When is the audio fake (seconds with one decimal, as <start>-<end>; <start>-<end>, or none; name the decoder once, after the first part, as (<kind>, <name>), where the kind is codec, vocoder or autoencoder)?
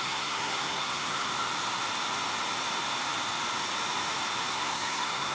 0.0-1.3 (codec, SNAC); 4.5-5.3